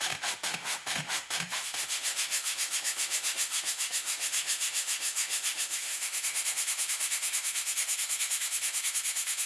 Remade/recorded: remade